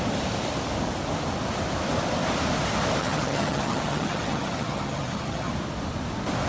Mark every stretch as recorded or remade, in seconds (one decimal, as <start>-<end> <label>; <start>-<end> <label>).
0.0-3.0 recorded; 3.0-5.5 remade; 5.5-6.5 recorded